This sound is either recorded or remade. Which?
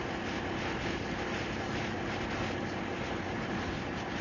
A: recorded